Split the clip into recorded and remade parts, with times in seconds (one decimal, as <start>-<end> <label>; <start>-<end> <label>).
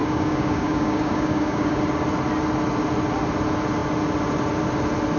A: 0.0-1.8 remade; 1.8-5.2 recorded